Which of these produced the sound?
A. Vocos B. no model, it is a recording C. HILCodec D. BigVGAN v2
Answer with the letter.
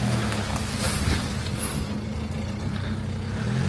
B